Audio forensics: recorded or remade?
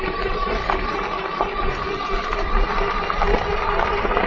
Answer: recorded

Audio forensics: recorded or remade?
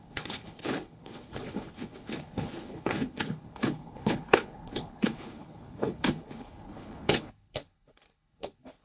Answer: remade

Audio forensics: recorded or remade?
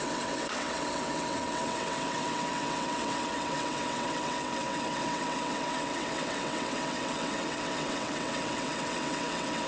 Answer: remade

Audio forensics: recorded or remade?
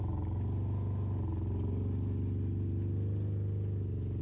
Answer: recorded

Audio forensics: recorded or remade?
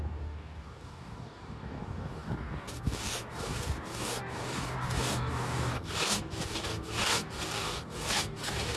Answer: remade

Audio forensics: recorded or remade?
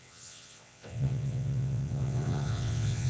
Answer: remade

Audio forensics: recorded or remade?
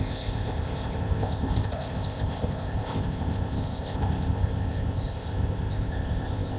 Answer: remade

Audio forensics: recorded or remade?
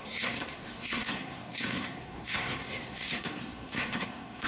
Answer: remade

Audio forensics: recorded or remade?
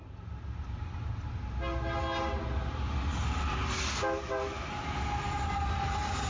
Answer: recorded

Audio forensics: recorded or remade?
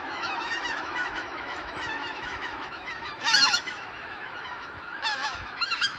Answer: remade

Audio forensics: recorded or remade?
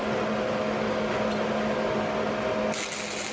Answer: recorded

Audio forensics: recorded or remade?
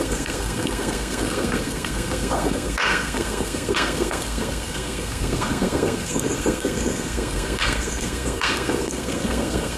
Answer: remade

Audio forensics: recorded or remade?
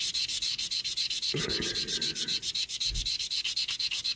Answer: recorded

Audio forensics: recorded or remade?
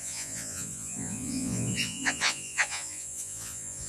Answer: remade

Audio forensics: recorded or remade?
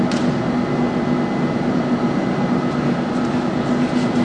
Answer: recorded